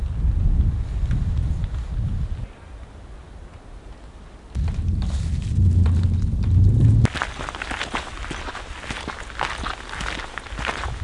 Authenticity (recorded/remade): recorded